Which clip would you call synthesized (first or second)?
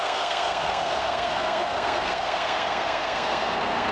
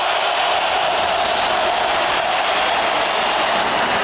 first